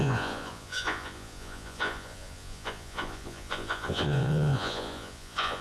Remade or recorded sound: remade